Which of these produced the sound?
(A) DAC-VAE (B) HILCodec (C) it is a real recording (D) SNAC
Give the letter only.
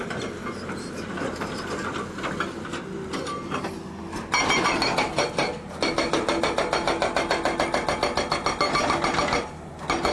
C